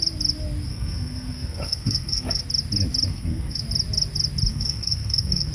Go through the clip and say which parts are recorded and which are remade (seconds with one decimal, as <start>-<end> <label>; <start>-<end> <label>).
0.0-0.7 recorded; 0.7-2.4 remade; 2.4-3.1 recorded; 3.1-3.6 remade; 3.6-4.5 recorded; 4.5-5.5 remade